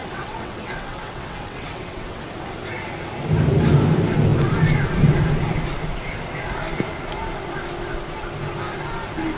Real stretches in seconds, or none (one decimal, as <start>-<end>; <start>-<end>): 2.2-9.4